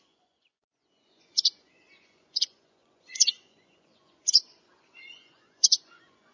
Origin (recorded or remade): remade